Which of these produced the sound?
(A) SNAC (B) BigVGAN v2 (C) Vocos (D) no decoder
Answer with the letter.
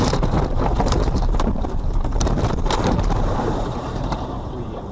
B